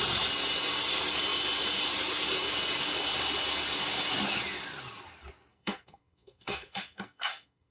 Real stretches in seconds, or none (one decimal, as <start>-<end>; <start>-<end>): 0.0-5.5

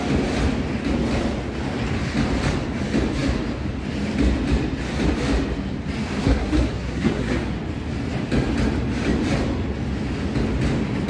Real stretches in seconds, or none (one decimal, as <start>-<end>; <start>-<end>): 0.0-6.2; 7.4-11.1

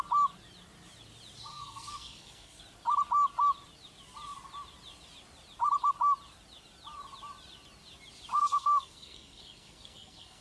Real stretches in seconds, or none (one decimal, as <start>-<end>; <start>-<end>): 0.0-1.5; 2.6-8.3

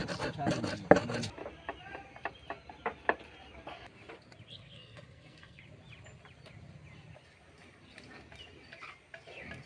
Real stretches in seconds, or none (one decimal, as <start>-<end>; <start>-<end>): 0.0-4.5; 5.6-9.7

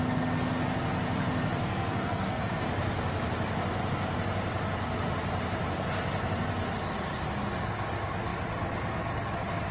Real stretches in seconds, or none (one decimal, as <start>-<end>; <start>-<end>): 0.0-1.6; 2.4-9.7

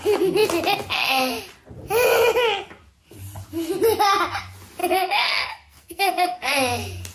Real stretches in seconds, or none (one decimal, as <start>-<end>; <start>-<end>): 0.0-4.8; 6.5-7.1

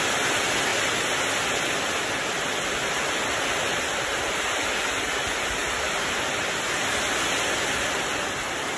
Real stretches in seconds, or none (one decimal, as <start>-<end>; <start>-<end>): 0.0-8.8

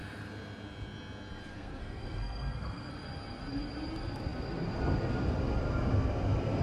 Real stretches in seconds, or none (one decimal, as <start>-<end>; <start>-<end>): 0.0-1.5; 2.9-6.6